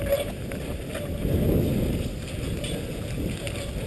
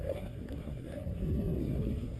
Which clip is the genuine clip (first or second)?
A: first